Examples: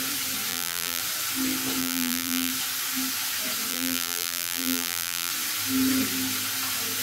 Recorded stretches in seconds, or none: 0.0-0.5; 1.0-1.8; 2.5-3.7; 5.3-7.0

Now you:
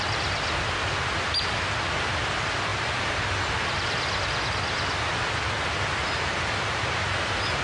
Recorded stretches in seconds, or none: 0.0-7.6

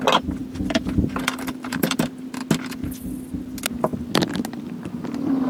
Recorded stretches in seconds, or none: 0.0-0.4; 2.1-5.5